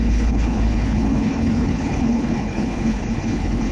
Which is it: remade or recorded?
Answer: remade